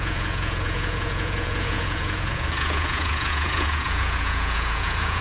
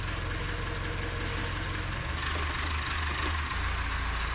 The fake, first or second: first